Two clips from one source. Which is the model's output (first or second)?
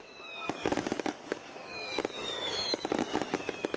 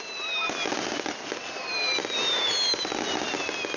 first